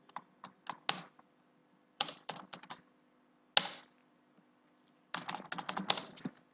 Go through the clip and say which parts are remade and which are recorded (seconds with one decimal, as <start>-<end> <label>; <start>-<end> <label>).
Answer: 0.0-1.6 recorded; 1.6-2.8 remade; 2.8-4.0 recorded; 4.0-5.4 remade; 5.4-6.5 recorded